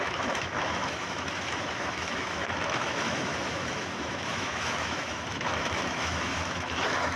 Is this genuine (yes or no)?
no